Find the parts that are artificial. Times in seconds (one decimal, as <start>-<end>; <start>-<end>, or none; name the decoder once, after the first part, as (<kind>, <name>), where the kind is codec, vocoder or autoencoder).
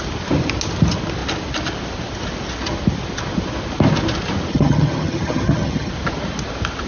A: 4.5-5.9 (vocoder, HiFi-GAN)